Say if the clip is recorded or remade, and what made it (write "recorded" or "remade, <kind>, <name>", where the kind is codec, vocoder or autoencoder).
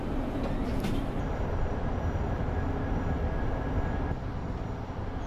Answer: recorded